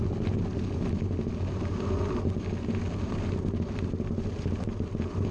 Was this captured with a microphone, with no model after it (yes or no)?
yes